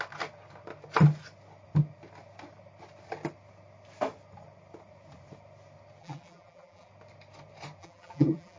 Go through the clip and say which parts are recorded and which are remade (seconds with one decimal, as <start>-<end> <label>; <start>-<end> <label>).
0.0-6.0 recorded; 6.0-6.9 remade; 6.9-7.8 recorded; 7.8-8.6 remade

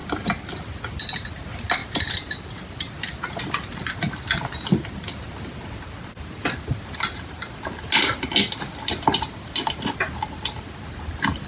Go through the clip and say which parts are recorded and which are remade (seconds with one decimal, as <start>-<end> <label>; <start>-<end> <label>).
0.0-1.8 recorded; 1.8-2.6 remade; 2.6-11.5 recorded

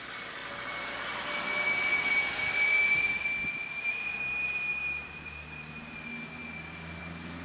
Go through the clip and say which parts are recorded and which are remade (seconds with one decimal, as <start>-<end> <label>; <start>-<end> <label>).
0.0-4.7 recorded; 4.7-5.7 remade; 5.7-7.4 recorded